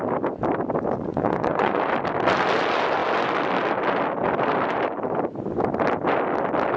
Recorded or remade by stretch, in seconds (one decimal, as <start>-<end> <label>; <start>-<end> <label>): 0.0-1.1 recorded; 1.1-1.8 remade; 1.8-6.8 recorded